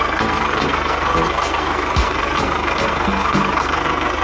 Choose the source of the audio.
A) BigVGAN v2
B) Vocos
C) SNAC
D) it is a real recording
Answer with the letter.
C